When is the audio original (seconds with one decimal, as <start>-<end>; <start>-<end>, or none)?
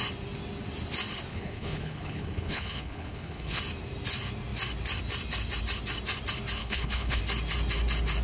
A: 0.0-1.3; 3.6-6.6; 7.2-8.2